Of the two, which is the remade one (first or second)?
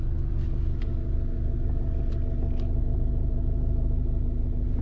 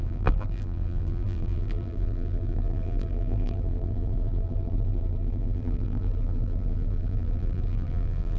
second